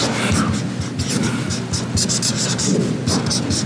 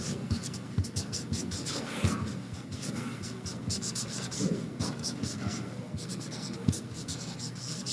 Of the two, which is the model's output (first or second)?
second